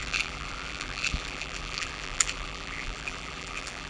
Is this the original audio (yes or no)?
no